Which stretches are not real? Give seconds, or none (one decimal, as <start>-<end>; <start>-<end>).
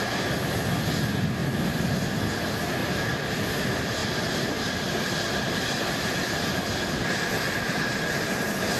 1.4-1.9; 2.8-3.6; 4.0-7.3